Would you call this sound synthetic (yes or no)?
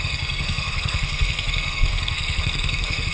yes